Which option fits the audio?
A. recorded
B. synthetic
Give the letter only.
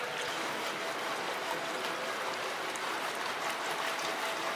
A